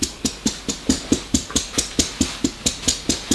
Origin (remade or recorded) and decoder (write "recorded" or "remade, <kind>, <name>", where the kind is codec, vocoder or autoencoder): recorded